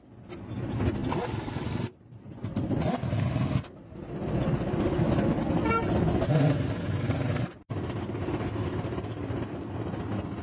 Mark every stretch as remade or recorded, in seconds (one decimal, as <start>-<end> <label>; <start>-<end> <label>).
0.0-1.0 recorded; 1.0-2.9 remade; 2.9-10.4 recorded